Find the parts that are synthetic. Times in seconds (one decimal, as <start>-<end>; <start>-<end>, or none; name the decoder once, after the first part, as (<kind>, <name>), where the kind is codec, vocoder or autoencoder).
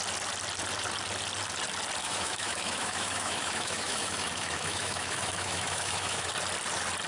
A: 2.0-6.3 (autoencoder, DAC-VAE)